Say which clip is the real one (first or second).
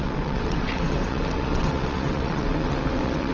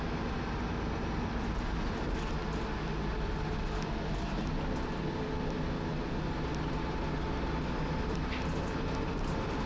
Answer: second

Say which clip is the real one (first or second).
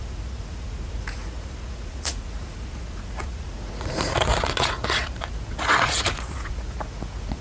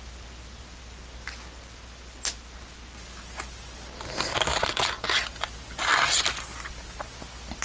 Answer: second